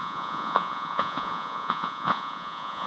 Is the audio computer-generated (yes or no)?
yes